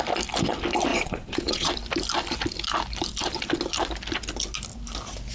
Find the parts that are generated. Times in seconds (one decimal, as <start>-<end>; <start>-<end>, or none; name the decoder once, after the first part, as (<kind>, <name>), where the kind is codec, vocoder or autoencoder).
0.9-1.7 (vocoder, Vocos)

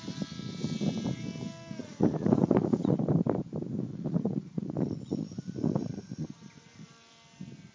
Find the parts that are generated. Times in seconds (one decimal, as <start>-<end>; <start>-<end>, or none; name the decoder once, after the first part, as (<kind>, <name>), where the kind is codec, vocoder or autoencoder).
1.8-3.0 (vocoder, Vocos); 3.9-6.9

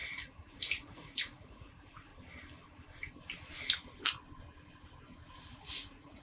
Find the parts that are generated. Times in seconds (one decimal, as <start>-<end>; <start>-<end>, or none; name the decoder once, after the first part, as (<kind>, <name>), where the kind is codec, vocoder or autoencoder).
0.0-2.1 (vocoder, Vocos); 5.5-6.2

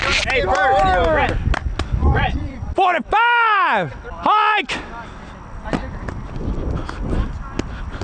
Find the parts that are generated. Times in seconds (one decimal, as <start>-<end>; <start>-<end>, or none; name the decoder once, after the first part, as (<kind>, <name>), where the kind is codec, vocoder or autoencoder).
2.0-2.7 (vocoder, Vocos)

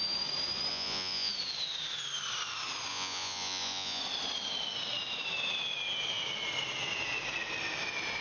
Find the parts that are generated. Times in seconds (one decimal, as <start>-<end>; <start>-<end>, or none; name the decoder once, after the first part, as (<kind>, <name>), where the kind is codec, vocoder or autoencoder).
0.7-1.3 (vocoder, Vocos); 2.9-4.0

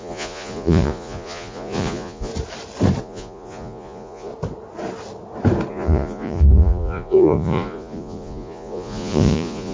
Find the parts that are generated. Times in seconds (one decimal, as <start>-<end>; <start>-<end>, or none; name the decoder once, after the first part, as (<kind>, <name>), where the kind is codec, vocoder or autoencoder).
0.0-2.3 (vocoder, Vocos); 3.0-4.3; 5.7-9.7

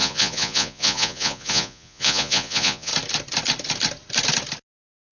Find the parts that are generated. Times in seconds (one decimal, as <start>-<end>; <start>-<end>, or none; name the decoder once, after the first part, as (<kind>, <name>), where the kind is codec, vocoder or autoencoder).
0.0-2.9 (vocoder, Vocos)

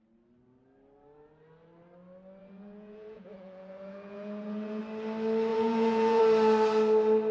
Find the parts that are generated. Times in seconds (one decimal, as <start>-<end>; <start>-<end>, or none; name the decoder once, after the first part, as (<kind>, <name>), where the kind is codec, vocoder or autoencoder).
2.4-4.8 (vocoder, Vocos); 5.5-6.2